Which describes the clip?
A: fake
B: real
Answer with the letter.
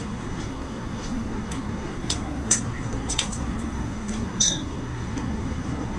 A